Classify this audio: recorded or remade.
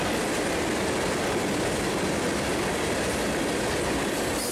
recorded